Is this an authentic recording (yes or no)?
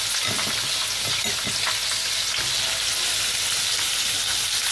yes